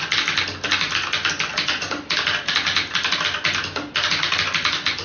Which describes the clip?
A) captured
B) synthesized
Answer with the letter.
A